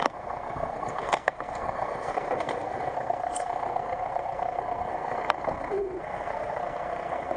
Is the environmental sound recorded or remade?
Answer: remade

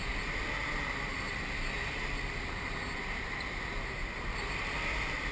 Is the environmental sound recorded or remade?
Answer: recorded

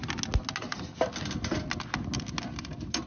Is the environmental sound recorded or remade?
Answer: recorded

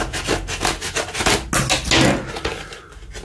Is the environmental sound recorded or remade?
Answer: recorded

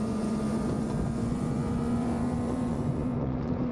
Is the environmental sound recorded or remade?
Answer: remade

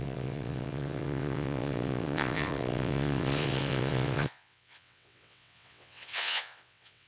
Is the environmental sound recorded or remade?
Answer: remade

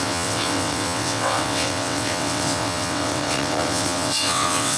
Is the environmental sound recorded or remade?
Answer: remade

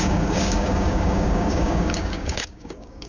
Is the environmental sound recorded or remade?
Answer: remade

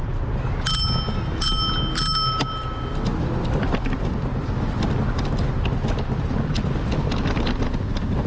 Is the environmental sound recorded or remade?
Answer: recorded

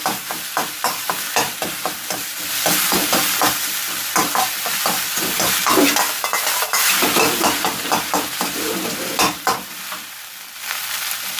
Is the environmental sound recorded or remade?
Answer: remade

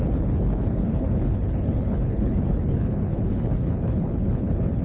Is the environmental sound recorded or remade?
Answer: remade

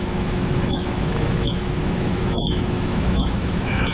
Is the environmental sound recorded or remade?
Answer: remade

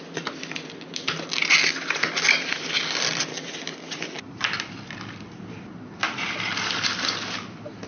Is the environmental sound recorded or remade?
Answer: recorded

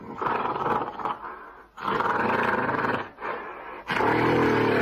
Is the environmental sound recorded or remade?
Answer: recorded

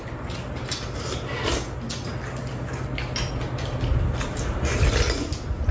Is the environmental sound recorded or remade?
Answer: recorded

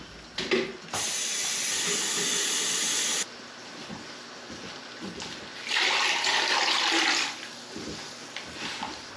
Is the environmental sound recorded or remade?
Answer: remade